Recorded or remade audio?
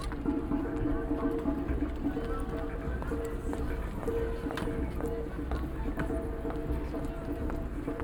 recorded